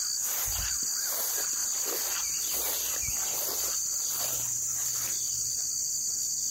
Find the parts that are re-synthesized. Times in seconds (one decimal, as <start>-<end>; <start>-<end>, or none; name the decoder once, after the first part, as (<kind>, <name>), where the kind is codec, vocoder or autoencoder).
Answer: none